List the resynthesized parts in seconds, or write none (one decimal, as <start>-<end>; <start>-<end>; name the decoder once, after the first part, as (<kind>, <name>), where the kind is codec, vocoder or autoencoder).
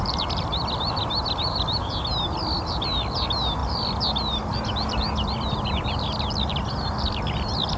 0.0-1.9 (vocoder, BigVGAN v2); 3.6-7.8